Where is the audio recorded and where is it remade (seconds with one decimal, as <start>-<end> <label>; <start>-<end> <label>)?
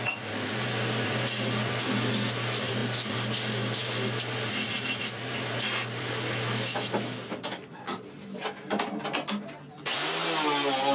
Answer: 0.0-10.9 recorded